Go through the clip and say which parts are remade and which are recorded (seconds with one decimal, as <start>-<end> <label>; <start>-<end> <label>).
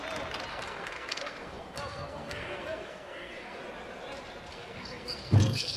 0.0-0.5 recorded; 0.5-3.6 remade; 3.6-4.5 recorded; 4.5-5.8 remade